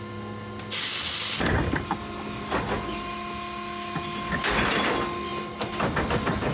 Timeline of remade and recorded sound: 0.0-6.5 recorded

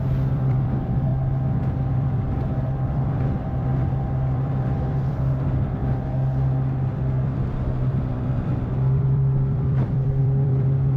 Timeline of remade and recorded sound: 0.0-1.1 remade; 1.1-1.9 recorded; 1.9-5.8 remade; 5.8-6.8 recorded; 6.8-11.0 remade

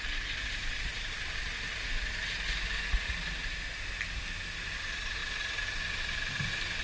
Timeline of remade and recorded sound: 0.0-6.8 recorded

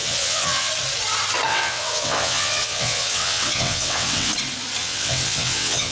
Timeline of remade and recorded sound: 0.0-0.7 remade; 0.7-1.5 recorded; 1.5-4.3 remade; 4.3-4.8 recorded; 4.8-5.9 remade

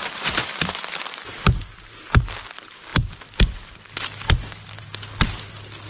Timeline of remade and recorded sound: 0.0-5.9 recorded

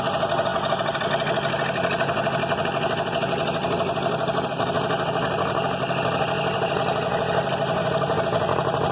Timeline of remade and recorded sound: 0.0-8.9 recorded

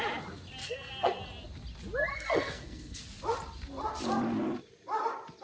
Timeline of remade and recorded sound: 0.0-0.6 recorded; 0.6-1.2 remade; 1.2-2.1 recorded; 2.1-3.0 remade; 3.0-5.4 recorded

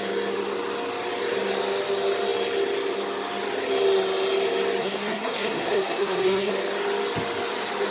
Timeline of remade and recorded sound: 0.0-4.8 recorded; 4.8-6.5 remade; 6.5-7.9 recorded